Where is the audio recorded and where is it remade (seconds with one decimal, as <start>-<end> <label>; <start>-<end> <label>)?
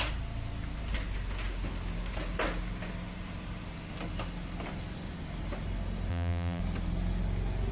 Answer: 0.0-6.1 recorded; 6.1-6.6 remade; 6.6-7.7 recorded